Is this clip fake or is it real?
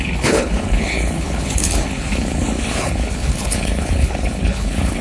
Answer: fake